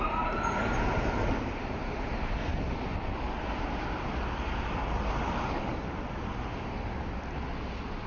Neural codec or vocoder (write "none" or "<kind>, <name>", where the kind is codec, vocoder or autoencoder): none